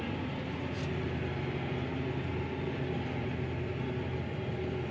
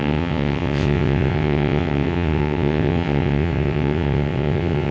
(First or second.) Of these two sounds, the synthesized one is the second